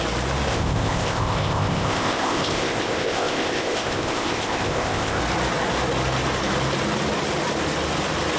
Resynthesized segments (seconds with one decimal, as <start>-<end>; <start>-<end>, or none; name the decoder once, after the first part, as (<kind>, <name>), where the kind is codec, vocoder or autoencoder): 0.5-5.2 (codec, ZipCodec)